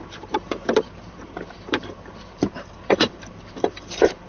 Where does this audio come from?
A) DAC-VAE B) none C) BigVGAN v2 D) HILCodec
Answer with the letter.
C